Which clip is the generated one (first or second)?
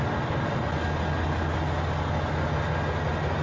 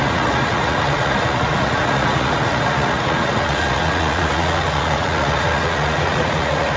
second